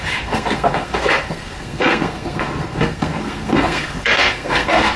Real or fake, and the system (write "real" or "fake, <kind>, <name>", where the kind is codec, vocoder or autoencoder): fake, codec, SNAC